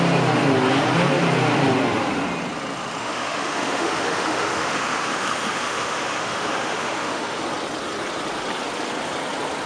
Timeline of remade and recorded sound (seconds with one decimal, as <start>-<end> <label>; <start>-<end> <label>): 0.0-3.0 recorded; 3.0-7.4 remade; 7.4-9.7 recorded